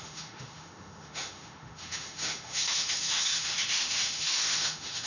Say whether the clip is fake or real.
fake